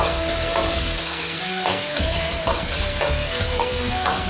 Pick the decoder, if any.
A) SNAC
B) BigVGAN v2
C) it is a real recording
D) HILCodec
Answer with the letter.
A